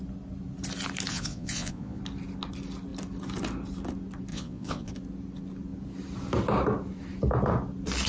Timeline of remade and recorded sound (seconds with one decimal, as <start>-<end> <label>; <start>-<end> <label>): 0.0-1.1 recorded; 1.1-2.0 remade; 2.0-4.3 recorded; 4.3-4.9 remade; 4.9-8.1 recorded